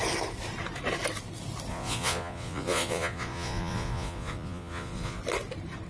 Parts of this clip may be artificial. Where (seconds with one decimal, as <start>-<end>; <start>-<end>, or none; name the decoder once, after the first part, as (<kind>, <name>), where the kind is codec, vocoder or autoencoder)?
1.7-5.2 (vocoder, Vocos)